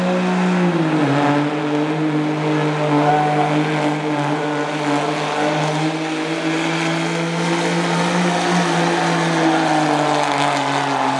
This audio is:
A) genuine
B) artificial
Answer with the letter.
A